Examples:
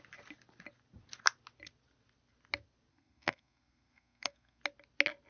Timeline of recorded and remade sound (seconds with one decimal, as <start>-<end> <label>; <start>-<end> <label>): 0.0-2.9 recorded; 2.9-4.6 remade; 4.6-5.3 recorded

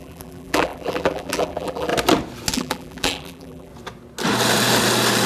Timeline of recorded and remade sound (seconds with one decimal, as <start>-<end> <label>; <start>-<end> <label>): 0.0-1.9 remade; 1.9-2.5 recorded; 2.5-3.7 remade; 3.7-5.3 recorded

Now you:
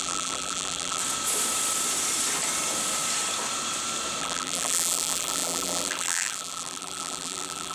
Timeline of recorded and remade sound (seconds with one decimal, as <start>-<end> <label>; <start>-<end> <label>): 0.0-1.0 remade; 1.0-4.2 recorded; 4.2-7.7 remade